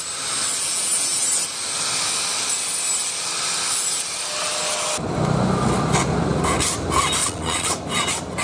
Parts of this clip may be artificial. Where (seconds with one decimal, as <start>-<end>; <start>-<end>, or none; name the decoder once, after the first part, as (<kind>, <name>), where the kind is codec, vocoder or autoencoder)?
7.2-7.7 (vocoder, Vocos)